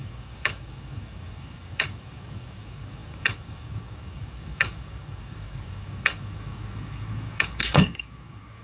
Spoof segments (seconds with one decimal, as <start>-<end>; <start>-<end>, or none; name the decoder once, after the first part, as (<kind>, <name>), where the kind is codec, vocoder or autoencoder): 0.0-8.6 (codec, DAC)